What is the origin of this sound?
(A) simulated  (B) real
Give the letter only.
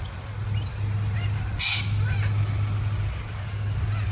B